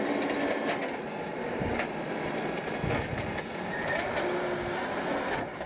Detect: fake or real real